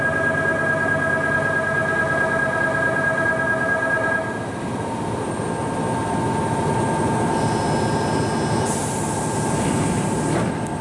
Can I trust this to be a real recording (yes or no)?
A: yes